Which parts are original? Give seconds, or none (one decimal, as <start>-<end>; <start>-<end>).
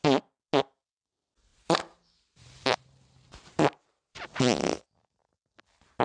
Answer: 0.0-1.5; 4.2-6.0